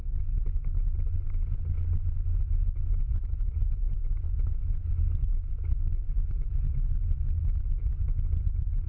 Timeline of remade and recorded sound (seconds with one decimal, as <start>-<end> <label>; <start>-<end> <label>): 0.0-3.0 recorded; 3.0-4.8 remade; 4.8-6.0 recorded; 6.0-8.9 remade